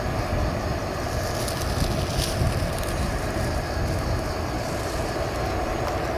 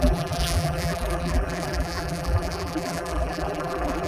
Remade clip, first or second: second